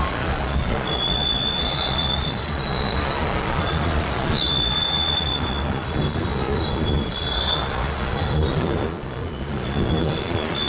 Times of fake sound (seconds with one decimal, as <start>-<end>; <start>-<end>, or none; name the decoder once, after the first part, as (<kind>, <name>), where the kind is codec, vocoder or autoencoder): 0.0-10.7 (vocoder, Vocos)